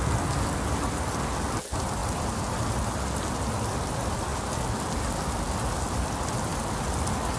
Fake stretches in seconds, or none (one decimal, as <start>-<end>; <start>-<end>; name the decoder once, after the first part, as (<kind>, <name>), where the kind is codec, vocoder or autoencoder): none